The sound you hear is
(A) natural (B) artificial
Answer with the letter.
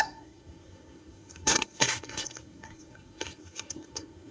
B